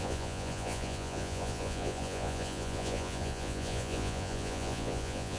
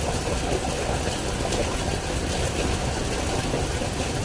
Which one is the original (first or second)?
second